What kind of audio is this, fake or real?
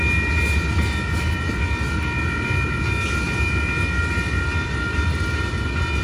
real